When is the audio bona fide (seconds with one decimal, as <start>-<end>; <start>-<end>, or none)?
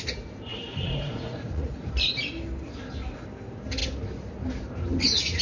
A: 0.0-0.5; 1.9-5.4